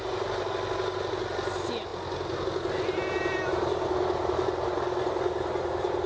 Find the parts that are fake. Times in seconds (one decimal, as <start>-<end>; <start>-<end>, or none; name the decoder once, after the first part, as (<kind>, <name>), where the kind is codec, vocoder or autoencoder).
none